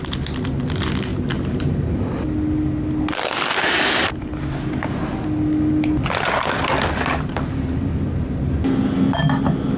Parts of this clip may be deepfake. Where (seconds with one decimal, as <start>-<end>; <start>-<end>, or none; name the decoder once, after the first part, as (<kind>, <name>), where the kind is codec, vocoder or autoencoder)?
1.1-2.0 (vocoder, BigVGAN v2)